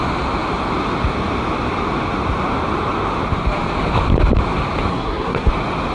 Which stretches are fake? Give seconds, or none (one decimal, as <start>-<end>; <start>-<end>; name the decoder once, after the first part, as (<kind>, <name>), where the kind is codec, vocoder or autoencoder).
4.9-5.5 (codec, SNAC)